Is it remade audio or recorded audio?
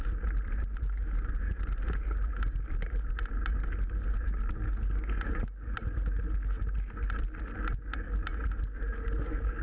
recorded